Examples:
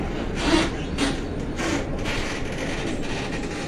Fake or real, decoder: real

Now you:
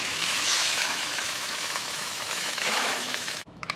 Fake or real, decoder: fake, autoencoder, DAC-VAE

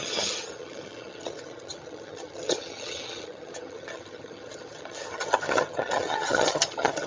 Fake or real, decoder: fake, vocoder, HiFi-GAN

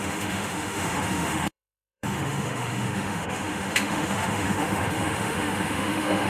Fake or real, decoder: fake, autoencoder, DAC-VAE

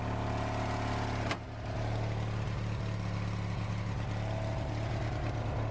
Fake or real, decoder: real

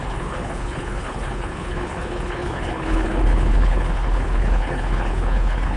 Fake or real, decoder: fake, codec, HILCodec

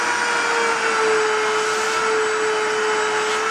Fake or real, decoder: real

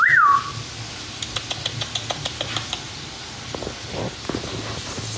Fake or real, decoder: real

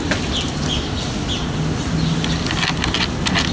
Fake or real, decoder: real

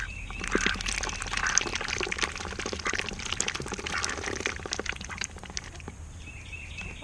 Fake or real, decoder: real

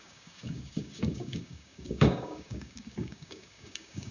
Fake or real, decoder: fake, codec, DAC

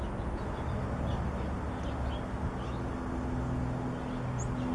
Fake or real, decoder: real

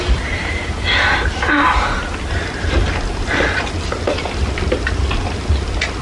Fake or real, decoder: real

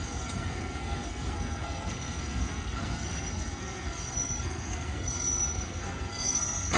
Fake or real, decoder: fake, codec, SNAC